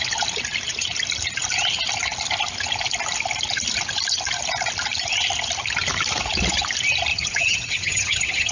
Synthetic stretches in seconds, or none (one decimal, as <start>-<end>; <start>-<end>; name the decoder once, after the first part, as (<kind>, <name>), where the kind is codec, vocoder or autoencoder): 7.1-8.5 (vocoder, HiFi-GAN)